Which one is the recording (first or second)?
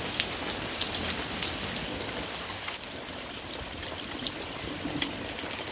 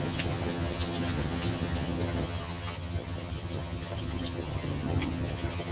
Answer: first